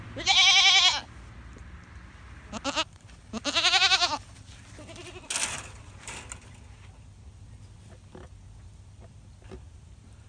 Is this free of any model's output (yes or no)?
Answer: yes